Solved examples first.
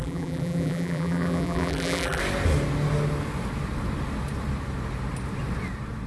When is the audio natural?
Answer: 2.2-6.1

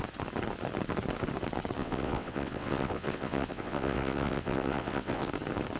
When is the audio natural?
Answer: 0.0-1.8; 5.3-5.8

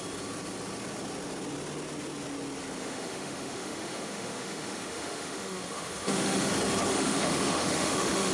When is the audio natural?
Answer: 0.0-2.8; 6.5-6.9

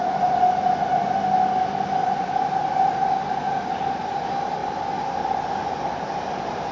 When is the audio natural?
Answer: 0.0-6.7

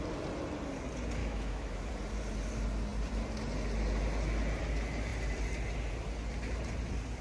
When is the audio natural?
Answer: 0.0-1.2; 1.9-7.2

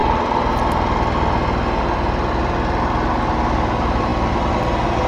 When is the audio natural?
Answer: 0.0-5.1

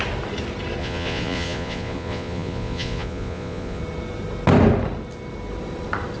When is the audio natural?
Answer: 0.0-0.8; 3.8-6.2

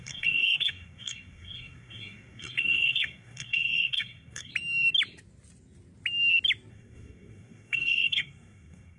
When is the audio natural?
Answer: 4.5-6.7